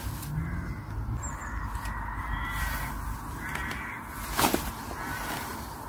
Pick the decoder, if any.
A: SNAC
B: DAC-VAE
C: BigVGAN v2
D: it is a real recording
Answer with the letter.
D